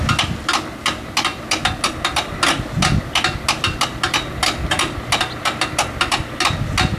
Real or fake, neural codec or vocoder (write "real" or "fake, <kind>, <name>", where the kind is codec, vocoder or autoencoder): real